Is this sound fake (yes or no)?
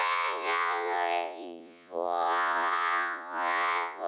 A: yes